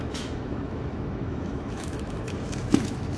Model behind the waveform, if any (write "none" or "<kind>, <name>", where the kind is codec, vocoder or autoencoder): autoencoder, DAC-VAE